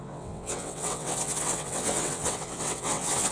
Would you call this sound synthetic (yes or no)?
yes